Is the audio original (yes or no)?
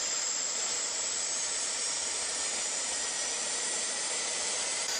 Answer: no